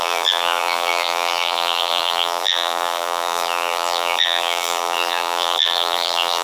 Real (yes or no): no